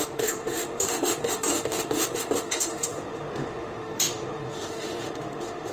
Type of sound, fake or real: fake